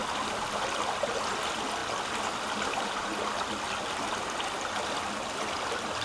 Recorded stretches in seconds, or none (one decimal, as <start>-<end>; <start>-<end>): 0.0-6.0